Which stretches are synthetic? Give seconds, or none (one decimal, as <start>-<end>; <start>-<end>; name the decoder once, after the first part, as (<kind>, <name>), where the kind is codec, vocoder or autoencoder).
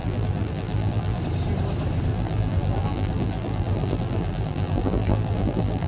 0.0-1.2 (vocoder, BigVGAN v2); 2.1-5.9